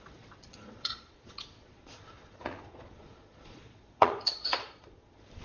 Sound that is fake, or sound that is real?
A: fake